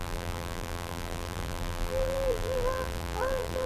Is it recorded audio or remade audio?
remade